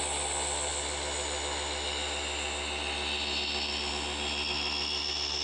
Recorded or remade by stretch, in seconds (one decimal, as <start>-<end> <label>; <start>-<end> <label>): 0.0-5.4 recorded